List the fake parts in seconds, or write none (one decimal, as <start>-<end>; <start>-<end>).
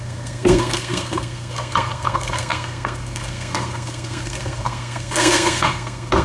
0.0-6.2